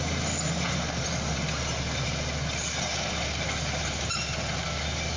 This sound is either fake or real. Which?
real